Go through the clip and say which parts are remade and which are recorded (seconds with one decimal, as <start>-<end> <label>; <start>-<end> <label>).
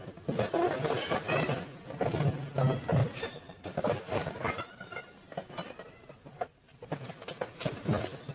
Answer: 0.0-3.0 recorded; 3.0-7.2 remade; 7.2-8.3 recorded